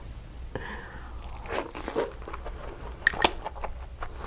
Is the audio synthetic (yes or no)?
no